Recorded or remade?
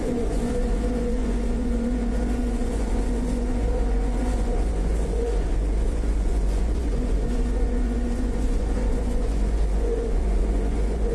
remade